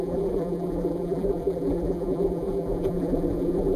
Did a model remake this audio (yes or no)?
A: yes